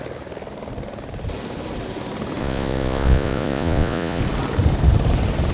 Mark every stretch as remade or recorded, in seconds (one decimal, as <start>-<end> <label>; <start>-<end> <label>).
0.0-2.4 recorded; 2.4-4.2 remade; 4.2-5.5 recorded